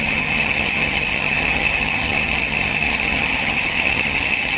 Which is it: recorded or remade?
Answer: remade